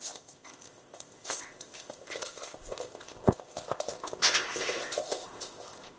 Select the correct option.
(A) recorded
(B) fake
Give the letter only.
B